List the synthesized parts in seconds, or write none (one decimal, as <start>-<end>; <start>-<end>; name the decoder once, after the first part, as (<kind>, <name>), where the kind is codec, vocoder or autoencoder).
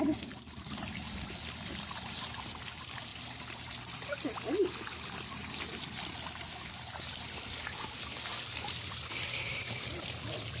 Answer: none